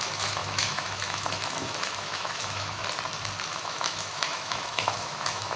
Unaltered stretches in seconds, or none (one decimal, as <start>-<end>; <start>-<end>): 2.8-3.5